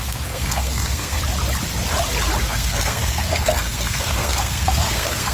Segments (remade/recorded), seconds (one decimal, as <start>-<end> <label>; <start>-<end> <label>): 0.0-1.2 remade; 1.2-2.4 recorded; 2.4-5.3 remade